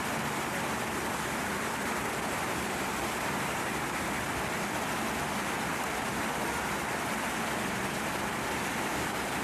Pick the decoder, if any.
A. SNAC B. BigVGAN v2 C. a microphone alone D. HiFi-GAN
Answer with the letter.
C